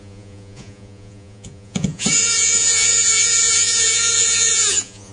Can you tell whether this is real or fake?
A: fake